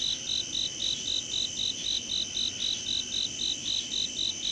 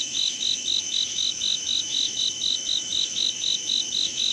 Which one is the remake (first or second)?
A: second